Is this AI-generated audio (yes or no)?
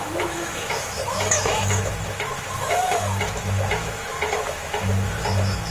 yes